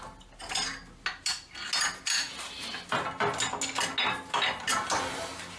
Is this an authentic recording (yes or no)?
yes